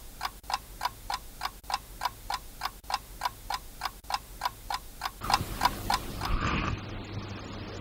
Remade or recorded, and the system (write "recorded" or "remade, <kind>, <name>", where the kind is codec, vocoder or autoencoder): recorded